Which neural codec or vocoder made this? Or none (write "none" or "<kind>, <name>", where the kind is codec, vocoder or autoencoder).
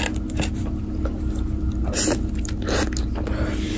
none